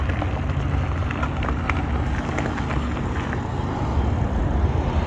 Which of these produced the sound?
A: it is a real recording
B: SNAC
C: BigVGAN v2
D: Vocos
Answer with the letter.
A